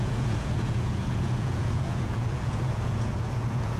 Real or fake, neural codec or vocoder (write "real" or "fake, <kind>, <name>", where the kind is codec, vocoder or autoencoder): fake, vocoder, Vocos